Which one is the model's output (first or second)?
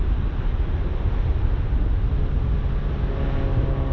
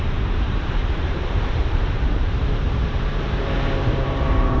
second